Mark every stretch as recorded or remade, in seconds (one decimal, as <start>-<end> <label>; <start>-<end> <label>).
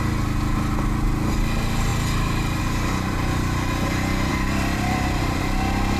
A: 0.0-4.3 recorded; 4.3-5.4 remade; 5.4-6.0 recorded